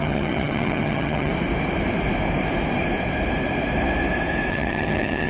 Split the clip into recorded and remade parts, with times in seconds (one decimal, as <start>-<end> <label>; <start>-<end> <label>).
0.0-1.3 remade; 1.3-4.5 recorded; 4.5-5.3 remade